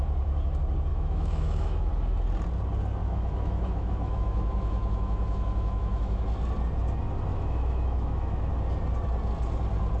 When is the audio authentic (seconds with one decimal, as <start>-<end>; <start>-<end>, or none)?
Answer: 0.0-0.9; 1.9-3.0; 6.2-7.3; 8.5-10.0